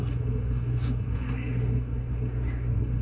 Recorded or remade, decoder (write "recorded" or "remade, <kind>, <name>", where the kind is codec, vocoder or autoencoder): remade, codec, SNAC